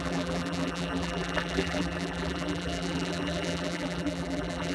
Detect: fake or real fake